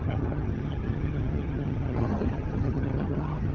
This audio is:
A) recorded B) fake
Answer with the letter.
B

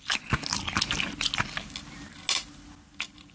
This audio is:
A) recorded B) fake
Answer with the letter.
A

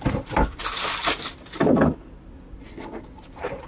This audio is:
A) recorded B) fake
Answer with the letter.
A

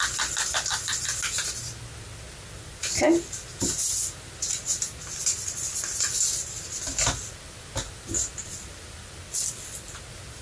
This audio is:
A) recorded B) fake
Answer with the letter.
A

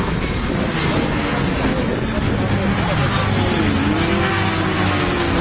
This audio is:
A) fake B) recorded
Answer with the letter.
B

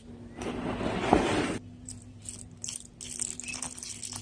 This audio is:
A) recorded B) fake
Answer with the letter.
A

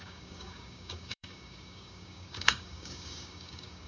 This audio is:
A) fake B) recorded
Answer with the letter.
A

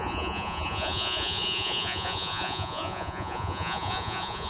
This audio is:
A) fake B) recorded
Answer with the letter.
A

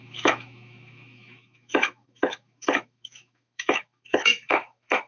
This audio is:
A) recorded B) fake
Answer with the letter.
B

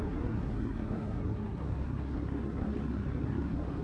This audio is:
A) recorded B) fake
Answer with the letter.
B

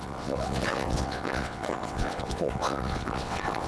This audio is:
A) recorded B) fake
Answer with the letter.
B